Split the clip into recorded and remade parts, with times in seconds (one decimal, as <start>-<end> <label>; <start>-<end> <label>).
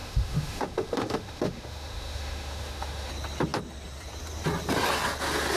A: 0.0-3.1 remade; 3.1-5.6 recorded